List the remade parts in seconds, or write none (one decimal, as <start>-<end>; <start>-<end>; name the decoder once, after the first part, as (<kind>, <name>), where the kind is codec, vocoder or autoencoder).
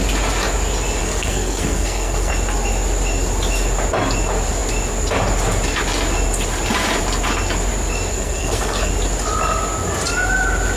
1.0-2.3 (codec, SNAC); 8.1-8.9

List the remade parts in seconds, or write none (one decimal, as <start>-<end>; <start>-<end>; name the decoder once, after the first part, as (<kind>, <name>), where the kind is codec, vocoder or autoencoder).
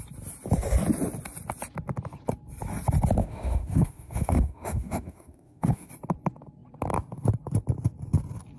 3.2-5.9 (autoencoder, DAC-VAE)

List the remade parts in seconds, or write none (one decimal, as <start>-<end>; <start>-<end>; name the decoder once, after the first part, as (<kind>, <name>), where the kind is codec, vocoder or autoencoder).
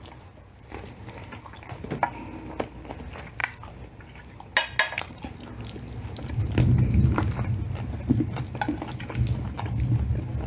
none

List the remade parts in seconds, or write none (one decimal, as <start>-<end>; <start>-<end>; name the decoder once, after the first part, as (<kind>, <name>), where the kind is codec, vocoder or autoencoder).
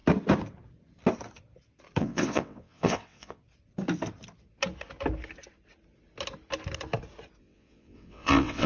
2.0-3.4 (vocoder, WaveNeXt); 7.4-8.7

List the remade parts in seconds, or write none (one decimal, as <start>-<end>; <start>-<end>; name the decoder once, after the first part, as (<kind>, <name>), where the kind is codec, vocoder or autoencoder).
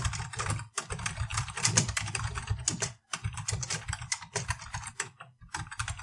none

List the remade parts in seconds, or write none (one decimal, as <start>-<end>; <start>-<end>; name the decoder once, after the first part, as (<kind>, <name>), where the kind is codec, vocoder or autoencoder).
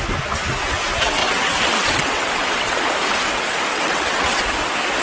1.2-2.8 (vocoder, WaveNeXt); 3.7-4.4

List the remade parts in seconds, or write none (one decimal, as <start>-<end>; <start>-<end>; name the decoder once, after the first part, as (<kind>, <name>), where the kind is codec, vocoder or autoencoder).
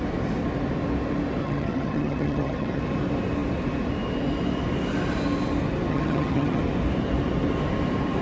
1.4-2.8 (vocoder, HiFi-GAN); 5.9-6.6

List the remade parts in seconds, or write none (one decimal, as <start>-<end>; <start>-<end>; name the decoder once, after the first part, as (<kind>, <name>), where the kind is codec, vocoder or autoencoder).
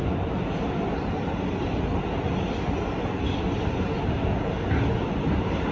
none